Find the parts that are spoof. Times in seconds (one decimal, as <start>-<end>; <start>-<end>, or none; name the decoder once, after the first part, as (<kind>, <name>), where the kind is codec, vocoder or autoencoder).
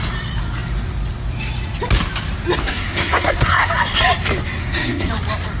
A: 2.6-3.7 (codec, SNAC); 4.6-5.1